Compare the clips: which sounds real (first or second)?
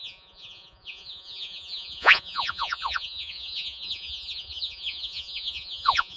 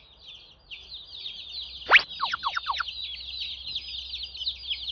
second